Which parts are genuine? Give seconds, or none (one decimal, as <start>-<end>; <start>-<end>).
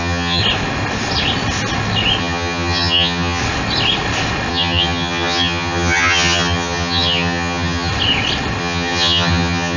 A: 0.4-2.2; 3.4-4.5; 7.9-8.6